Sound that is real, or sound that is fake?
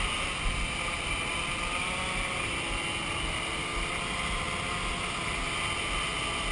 real